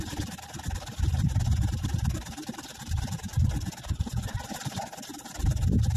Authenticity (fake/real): fake